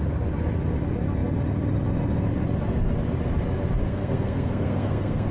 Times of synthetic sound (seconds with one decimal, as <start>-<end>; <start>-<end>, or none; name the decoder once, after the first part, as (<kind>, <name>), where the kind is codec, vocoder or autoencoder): 3.8-5.3 (codec, SNAC)